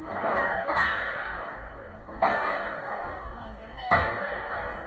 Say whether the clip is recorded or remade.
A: remade